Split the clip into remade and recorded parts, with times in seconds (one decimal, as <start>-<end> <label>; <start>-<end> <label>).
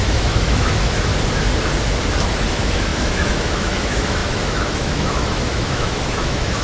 0.0-1.1 remade; 1.1-2.5 recorded; 2.5-6.6 remade